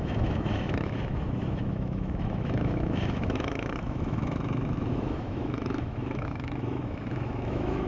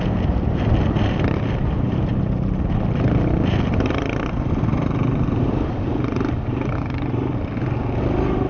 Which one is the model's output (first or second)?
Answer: first